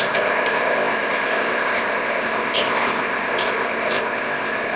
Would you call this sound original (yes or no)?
no